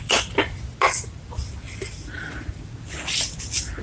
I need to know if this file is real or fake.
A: real